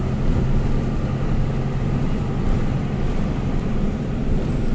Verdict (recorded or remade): recorded